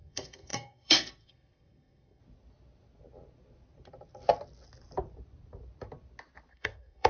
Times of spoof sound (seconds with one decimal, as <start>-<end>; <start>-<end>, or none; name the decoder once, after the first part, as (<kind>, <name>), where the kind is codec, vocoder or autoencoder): 0.0-2.2 (codec, SNAC); 6.5-7.1